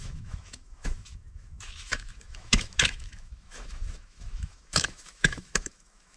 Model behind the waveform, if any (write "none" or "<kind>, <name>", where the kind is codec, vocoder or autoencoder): autoencoder, DAC-VAE